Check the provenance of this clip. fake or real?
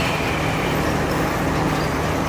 real